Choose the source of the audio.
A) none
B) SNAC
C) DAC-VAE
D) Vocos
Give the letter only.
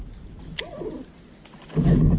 A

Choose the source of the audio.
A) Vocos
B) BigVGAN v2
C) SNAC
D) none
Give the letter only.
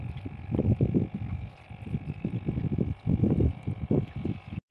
B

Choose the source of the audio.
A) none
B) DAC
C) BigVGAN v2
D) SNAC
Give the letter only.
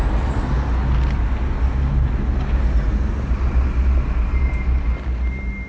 A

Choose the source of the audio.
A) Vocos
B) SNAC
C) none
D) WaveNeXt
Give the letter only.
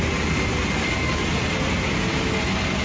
C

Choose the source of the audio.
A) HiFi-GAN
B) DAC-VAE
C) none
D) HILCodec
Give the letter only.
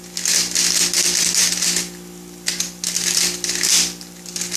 C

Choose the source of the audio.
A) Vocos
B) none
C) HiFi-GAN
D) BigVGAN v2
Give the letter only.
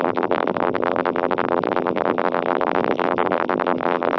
D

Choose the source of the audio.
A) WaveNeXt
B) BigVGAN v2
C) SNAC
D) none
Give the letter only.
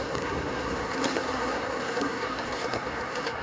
C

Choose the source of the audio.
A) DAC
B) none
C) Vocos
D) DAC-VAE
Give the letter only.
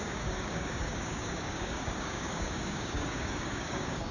A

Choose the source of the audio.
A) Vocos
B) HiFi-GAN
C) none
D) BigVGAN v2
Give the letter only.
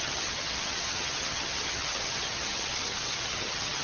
B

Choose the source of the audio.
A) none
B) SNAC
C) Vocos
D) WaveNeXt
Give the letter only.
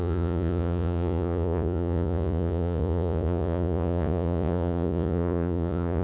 C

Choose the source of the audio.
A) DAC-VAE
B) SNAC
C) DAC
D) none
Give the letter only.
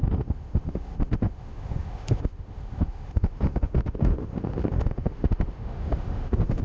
A